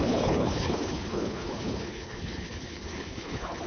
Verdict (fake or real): fake